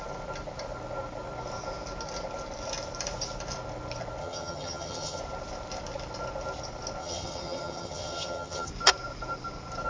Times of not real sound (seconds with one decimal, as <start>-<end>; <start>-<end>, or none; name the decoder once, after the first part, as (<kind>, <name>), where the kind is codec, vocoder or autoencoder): 4.2-5.2 (vocoder, HiFi-GAN); 7.0-8.7